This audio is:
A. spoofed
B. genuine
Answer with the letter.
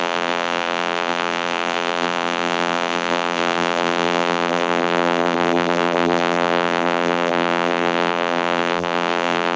A